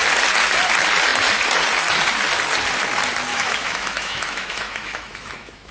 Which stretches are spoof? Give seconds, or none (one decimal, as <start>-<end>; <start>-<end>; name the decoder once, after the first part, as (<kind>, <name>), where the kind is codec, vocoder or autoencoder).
3.3-5.7 (autoencoder, DAC-VAE)